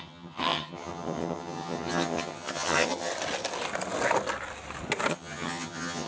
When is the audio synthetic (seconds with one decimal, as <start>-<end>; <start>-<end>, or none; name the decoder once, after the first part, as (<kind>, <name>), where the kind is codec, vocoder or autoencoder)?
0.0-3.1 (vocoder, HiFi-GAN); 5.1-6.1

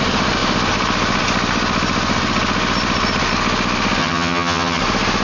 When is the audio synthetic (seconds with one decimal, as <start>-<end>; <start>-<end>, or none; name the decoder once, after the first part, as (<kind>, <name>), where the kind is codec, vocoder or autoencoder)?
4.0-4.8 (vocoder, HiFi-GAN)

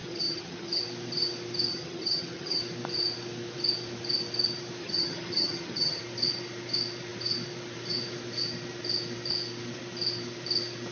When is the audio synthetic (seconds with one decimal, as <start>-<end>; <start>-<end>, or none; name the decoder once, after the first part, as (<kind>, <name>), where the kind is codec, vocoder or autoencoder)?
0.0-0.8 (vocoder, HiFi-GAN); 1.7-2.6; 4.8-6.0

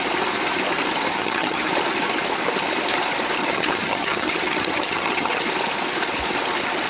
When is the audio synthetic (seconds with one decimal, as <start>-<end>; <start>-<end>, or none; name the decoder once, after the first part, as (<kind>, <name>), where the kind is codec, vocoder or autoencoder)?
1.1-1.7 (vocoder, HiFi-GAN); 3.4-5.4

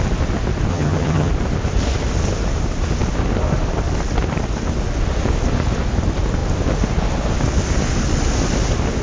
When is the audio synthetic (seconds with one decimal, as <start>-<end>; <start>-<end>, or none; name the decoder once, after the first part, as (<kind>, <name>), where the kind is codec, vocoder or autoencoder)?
0.7-1.3 (vocoder, HiFi-GAN)